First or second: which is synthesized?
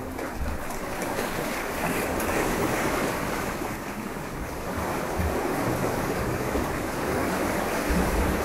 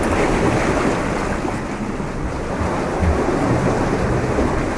first